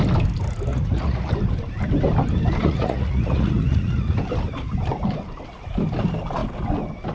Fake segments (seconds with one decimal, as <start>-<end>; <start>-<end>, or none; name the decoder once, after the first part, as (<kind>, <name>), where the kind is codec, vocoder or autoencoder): 0.7-1.3 (vocoder, Vocos); 2.6-4.1